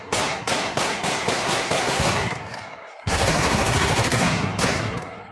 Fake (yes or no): yes